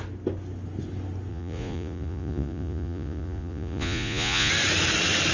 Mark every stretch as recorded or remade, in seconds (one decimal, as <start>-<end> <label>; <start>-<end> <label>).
0.0-1.3 recorded; 1.3-4.5 remade; 4.5-5.3 recorded